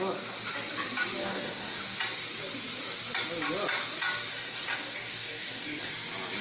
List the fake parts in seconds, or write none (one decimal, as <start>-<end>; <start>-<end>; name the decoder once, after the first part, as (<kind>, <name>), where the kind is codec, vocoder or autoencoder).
1.2-1.8 (codec, DAC); 4.3-5.9